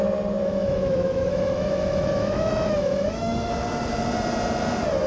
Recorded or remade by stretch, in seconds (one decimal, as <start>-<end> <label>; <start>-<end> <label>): 0.0-0.4 recorded; 0.4-3.5 remade; 3.5-5.1 recorded